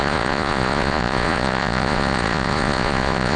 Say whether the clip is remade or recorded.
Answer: remade